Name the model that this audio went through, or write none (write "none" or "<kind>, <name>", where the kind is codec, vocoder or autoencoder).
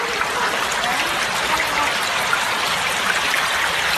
none